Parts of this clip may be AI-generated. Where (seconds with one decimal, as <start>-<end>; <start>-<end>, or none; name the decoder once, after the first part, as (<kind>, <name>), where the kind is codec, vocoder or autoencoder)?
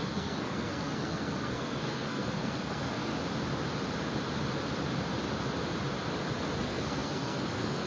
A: 0.0-3.1 (codec, SNAC); 6.6-7.9